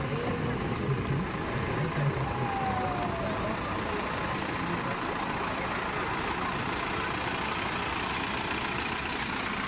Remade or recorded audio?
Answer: recorded